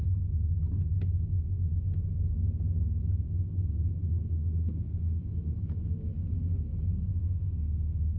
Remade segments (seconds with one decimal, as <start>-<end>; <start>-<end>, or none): 4.4-5.2; 7.1-8.2